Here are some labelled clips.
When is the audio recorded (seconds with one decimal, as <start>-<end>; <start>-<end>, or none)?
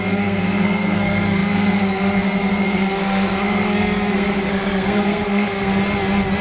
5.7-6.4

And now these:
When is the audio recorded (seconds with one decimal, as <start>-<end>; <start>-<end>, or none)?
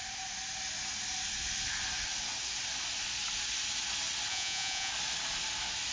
0.0-4.3; 4.9-5.9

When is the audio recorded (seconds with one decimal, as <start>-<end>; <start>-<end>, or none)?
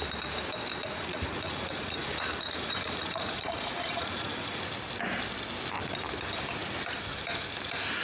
0.0-0.8; 4.6-8.0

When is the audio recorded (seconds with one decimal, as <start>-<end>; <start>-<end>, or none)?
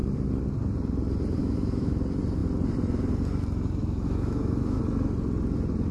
0.0-1.4; 1.9-3.8; 4.8-5.9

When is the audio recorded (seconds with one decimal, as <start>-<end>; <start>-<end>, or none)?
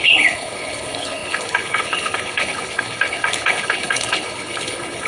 none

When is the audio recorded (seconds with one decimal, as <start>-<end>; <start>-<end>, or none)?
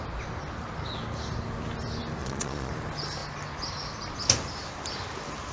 0.0-2.2; 2.7-5.5